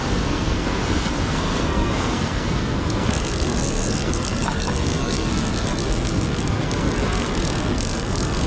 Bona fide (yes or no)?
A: no